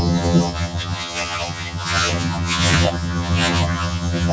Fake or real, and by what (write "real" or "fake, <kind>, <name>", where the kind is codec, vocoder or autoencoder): fake, vocoder, HiFi-GAN